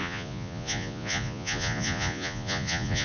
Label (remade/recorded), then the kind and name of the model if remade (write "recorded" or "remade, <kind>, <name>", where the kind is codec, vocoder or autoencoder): remade, vocoder, Vocos